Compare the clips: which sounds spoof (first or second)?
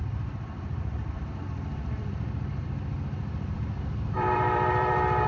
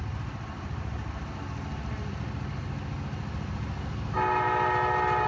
first